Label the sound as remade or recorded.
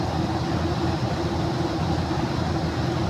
recorded